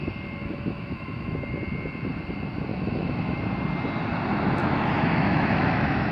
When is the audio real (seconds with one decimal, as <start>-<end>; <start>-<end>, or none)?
0.0-0.4; 1.5-2.7; 3.4-4.6